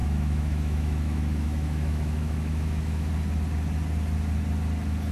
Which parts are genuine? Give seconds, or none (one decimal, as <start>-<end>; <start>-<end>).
3.1-5.1